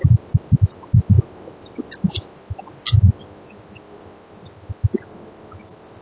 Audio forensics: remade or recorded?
recorded